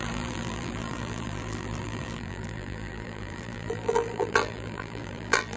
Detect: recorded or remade remade